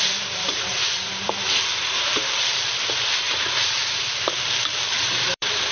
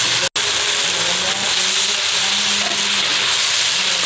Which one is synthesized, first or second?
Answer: first